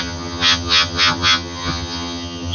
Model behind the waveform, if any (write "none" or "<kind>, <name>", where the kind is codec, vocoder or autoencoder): vocoder, HiFi-GAN